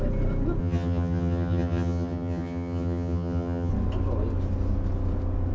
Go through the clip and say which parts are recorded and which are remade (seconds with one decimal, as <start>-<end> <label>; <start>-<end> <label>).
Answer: 0.0-0.6 recorded; 0.6-3.7 remade; 3.7-5.5 recorded